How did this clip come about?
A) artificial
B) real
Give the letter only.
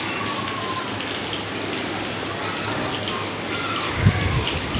B